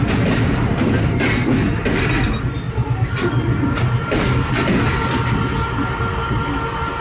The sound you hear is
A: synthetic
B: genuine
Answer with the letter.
B